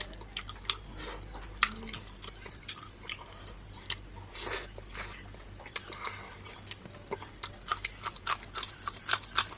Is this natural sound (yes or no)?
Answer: yes